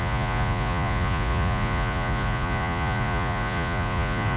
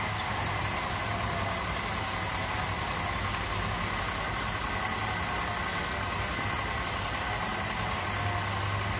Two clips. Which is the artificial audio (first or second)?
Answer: first